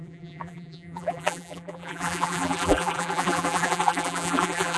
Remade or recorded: remade